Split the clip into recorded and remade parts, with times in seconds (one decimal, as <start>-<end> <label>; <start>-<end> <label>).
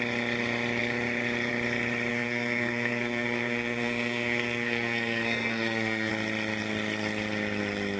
0.0-2.1 recorded; 2.1-6.1 remade; 6.1-8.0 recorded